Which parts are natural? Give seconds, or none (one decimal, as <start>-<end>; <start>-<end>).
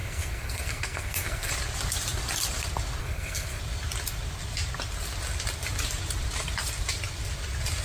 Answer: 1.5-3.0; 3.6-7.8